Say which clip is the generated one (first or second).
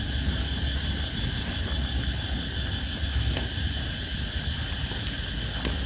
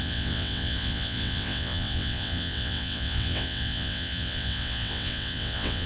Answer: second